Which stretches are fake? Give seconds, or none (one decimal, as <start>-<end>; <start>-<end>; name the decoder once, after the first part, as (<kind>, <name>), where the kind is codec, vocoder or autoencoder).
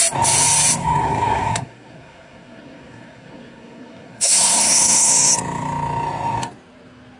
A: 0.8-5.1 (codec, SNAC)